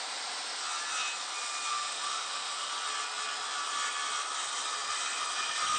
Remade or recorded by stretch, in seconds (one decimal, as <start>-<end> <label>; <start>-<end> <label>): 0.0-1.7 recorded; 1.7-2.7 remade; 2.7-5.8 recorded